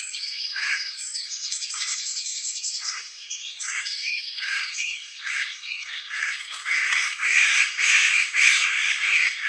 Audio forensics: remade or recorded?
remade